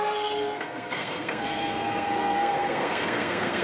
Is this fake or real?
fake